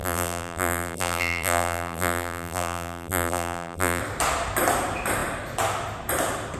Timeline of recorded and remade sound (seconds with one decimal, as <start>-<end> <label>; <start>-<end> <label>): 0.0-4.0 remade; 4.0-6.6 recorded